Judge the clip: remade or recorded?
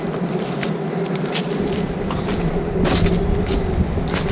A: recorded